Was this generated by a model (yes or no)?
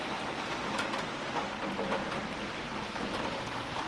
no